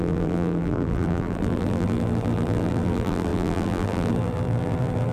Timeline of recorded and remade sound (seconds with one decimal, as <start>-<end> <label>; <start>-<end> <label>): 0.0-5.1 remade